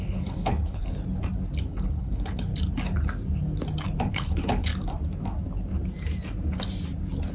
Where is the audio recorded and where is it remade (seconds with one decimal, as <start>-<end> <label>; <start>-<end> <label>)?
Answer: 0.0-0.8 remade; 0.8-1.6 recorded; 1.6-2.5 remade; 2.5-4.1 recorded; 4.1-4.7 remade; 4.7-7.3 recorded